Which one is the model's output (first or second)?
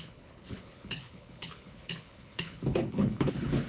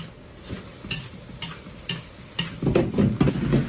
first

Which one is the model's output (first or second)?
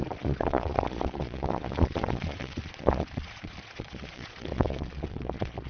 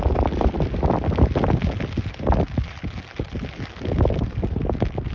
first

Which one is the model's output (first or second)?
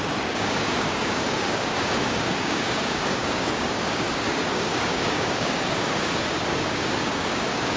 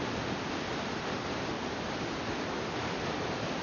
first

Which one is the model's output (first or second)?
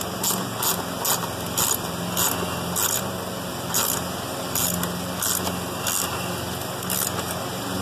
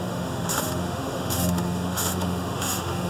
second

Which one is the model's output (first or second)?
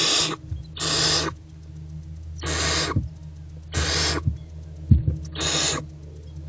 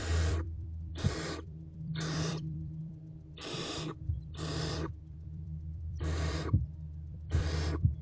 second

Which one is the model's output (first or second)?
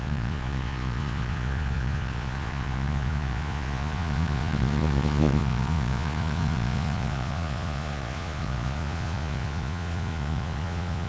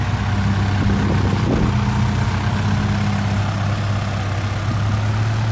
first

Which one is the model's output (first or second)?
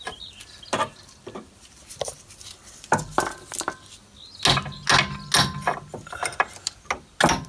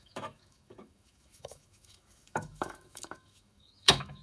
second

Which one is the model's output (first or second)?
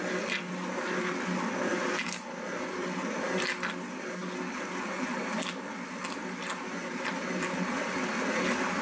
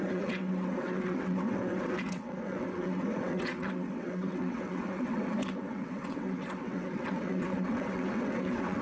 second